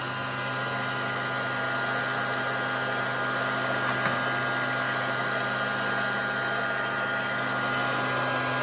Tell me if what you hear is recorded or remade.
recorded